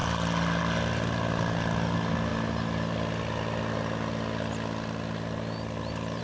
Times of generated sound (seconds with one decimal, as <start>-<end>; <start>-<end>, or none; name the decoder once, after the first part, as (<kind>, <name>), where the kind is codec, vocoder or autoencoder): none